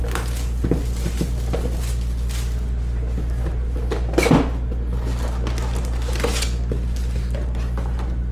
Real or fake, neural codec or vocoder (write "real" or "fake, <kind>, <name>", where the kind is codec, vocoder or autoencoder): real